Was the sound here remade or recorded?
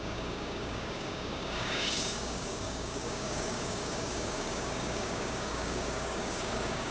remade